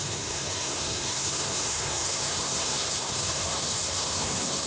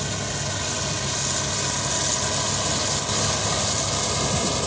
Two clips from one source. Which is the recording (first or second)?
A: second